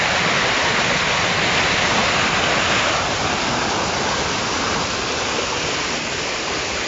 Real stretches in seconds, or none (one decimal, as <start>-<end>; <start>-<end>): 0.0-6.9